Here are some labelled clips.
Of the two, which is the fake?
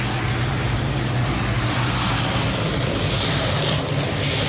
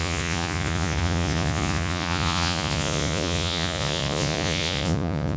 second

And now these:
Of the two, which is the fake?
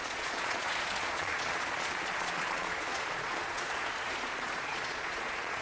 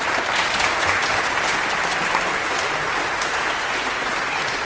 first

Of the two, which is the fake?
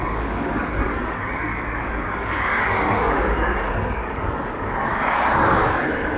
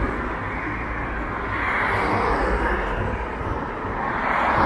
first